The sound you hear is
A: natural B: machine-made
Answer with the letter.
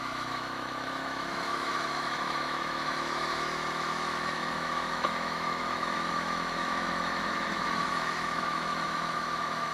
B